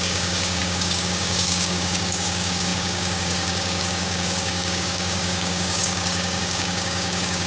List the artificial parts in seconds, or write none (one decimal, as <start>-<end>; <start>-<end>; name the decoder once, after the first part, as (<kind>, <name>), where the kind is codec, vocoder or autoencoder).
0.0-7.5 (codec, DAC)